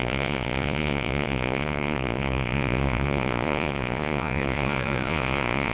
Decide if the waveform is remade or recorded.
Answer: remade